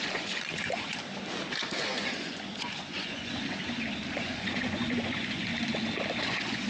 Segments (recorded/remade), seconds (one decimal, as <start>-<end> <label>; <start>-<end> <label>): 0.0-0.9 remade; 0.9-1.8 recorded; 1.8-3.6 remade; 3.6-4.2 recorded; 4.2-5.5 remade; 5.5-6.2 recorded; 6.2-6.7 remade